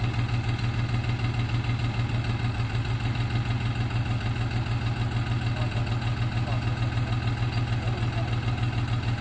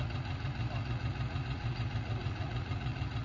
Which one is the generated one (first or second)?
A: second